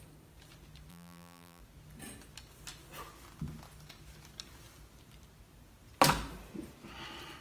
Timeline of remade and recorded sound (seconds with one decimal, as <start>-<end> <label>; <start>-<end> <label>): 0.0-0.9 recorded; 0.9-1.6 remade; 1.6-7.4 recorded